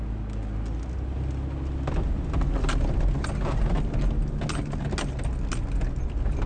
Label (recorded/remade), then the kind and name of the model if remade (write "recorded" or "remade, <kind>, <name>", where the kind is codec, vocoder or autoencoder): recorded